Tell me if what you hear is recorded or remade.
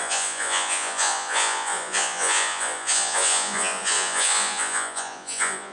remade